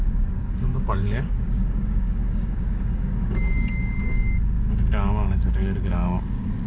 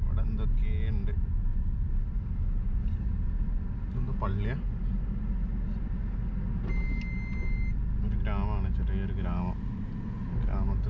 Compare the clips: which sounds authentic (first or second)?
second